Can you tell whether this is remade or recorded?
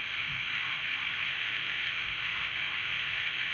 remade